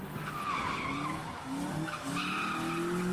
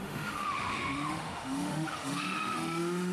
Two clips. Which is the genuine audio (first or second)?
first